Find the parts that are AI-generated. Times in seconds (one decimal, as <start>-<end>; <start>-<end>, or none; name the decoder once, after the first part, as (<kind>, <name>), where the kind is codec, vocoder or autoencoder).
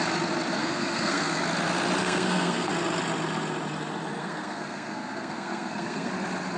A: 0.6-1.4 (codec, SNAC); 2.0-2.7; 4.2-6.1